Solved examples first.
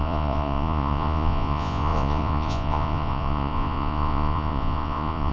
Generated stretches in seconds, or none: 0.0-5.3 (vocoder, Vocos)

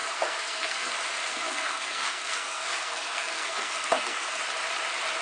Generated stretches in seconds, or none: 0.0-0.9 (codec, SNAC); 1.3-4.4

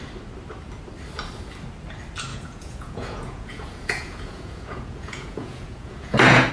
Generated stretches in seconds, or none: 2.3-6.5 (vocoder, Vocos)

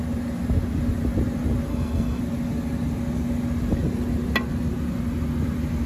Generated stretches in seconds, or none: 1.7-2.2 (codec, SNAC)